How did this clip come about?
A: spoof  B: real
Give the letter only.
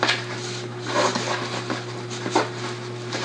B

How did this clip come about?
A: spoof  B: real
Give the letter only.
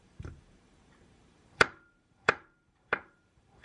A